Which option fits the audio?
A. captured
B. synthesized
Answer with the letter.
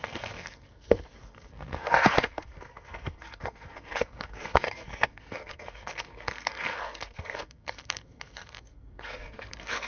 B